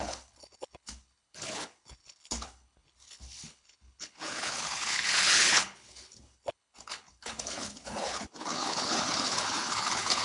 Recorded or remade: remade